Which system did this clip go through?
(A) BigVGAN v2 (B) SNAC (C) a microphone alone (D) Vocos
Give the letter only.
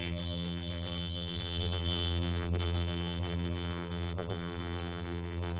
A